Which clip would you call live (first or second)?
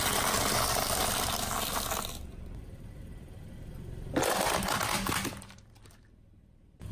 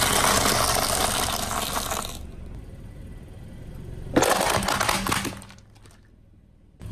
second